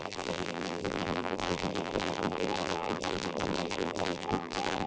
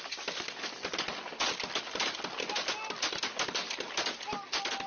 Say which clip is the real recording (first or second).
second